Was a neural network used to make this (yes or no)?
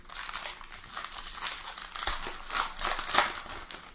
no